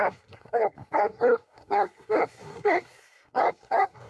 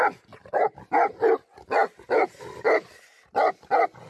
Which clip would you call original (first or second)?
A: second